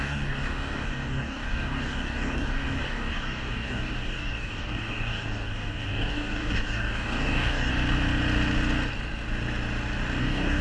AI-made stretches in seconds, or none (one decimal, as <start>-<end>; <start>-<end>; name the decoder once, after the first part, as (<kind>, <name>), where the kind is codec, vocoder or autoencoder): 0.0-7.7 (codec, DAC); 10.2-10.6